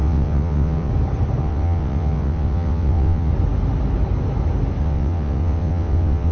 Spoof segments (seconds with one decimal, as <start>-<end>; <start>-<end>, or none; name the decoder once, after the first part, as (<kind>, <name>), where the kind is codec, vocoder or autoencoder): 0.0-0.9 (vocoder, WaveNeXt); 1.4-3.3; 4.8-6.3